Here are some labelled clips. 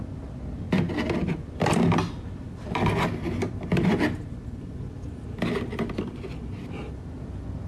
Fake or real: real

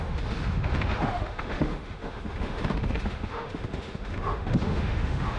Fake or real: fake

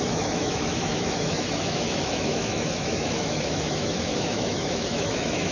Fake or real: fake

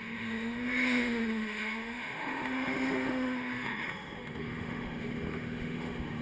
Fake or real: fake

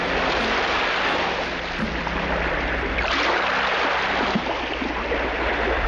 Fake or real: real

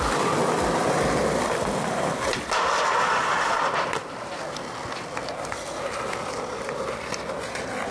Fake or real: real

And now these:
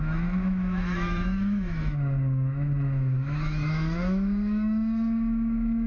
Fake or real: fake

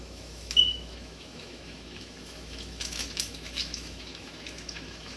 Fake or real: fake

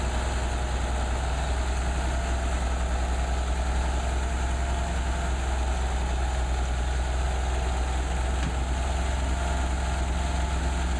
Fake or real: real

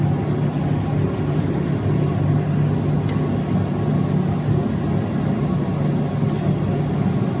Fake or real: real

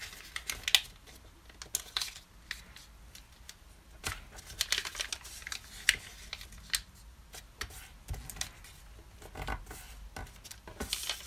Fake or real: real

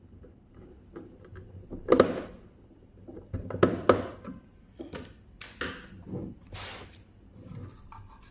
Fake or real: real